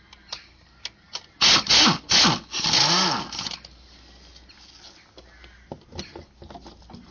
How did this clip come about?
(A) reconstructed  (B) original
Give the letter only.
B